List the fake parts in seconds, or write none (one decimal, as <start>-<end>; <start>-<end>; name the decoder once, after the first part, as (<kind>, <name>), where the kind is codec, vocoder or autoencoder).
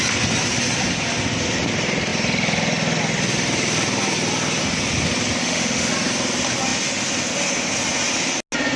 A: 5.4-5.9 (autoencoder, DAC-VAE)